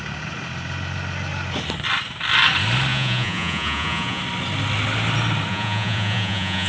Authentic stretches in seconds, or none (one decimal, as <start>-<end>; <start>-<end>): 0.0-2.9; 4.2-5.5